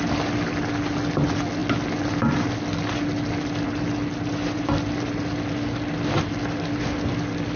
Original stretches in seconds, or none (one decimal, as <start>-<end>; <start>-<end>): 0.0-7.6